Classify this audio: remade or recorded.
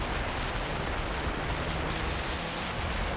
recorded